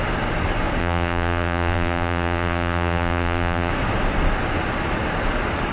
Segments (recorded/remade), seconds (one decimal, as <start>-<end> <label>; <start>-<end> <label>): 0.0-0.8 recorded; 0.8-3.7 remade; 3.7-5.7 recorded